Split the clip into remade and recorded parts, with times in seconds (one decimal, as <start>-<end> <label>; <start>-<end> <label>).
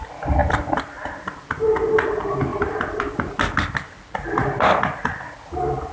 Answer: 0.0-0.4 recorded; 0.4-0.9 remade; 0.9-2.5 recorded; 2.5-3.3 remade; 3.3-5.9 recorded